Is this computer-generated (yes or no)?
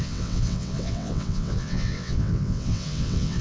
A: yes